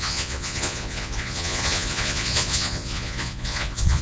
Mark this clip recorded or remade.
remade